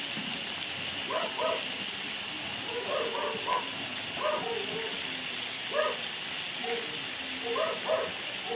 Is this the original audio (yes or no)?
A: yes